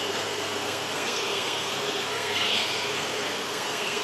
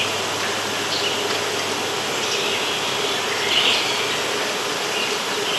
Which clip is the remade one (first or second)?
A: first